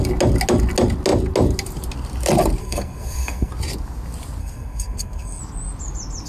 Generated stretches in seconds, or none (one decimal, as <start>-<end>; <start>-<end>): 2.6-3.5; 4.4-5.4